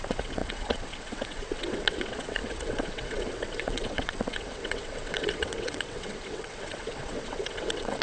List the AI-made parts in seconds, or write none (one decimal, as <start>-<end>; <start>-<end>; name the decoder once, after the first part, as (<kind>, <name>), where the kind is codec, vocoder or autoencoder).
0.0-8.0 (vocoder, WaveNeXt)